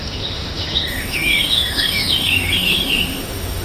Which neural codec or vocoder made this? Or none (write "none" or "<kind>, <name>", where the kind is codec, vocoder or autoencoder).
autoencoder, DAC-VAE